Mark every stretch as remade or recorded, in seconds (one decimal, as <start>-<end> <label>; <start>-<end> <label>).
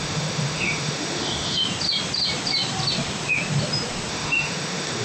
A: 0.0-1.6 remade; 1.6-4.1 recorded; 4.1-5.0 remade